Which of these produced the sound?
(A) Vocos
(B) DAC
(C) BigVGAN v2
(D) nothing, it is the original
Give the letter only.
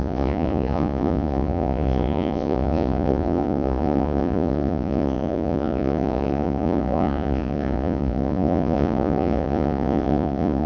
A